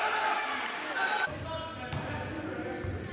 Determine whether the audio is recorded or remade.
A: recorded